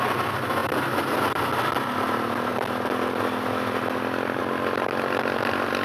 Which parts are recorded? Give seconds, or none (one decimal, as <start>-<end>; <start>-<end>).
0.0-5.8